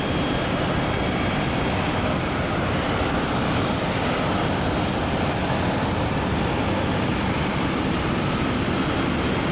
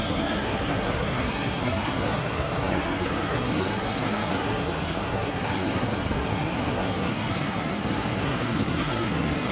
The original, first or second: first